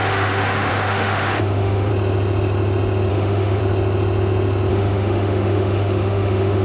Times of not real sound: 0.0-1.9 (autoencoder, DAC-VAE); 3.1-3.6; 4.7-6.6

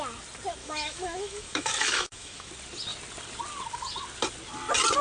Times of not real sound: 0.6-2.5 (autoencoder, DAC-VAE)

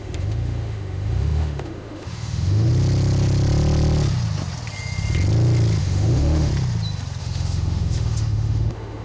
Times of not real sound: 0.0-2.7 (autoencoder, DAC-VAE); 5.8-6.5; 7.2-9.0

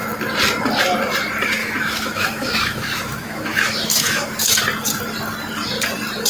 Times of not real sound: 1.6-4.6 (autoencoder, DAC-VAE)

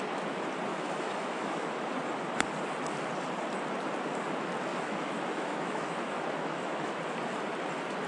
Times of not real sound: 0.7-1.9 (autoencoder, DAC-VAE); 4.7-7.0

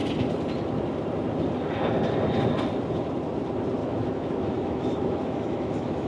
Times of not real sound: 3.8-6.1 (autoencoder, DAC-VAE)

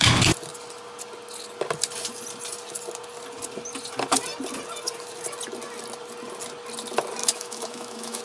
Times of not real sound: 7.2-8.2 (autoencoder, DAC-VAE)